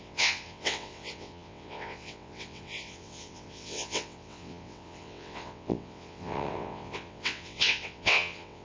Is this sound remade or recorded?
remade